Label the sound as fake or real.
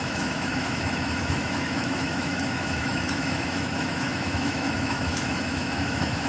fake